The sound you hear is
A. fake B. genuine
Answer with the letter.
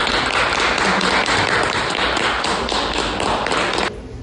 B